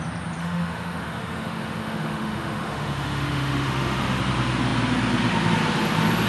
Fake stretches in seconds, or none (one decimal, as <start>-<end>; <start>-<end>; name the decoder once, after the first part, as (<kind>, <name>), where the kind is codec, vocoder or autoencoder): 0.4-4.2 (autoencoder, DAC-VAE)